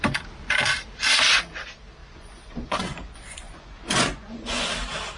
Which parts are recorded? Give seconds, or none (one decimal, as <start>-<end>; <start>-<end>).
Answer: 0.0-2.0; 4.7-5.2